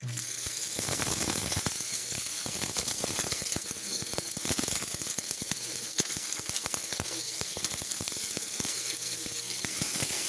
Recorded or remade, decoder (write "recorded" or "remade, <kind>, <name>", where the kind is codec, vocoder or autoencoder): remade, codec, SNAC